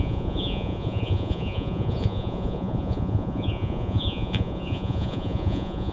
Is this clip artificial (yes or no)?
yes